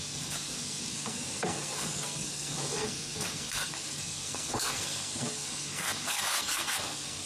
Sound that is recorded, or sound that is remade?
remade